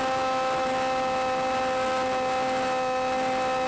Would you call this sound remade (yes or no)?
no